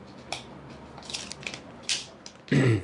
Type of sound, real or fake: real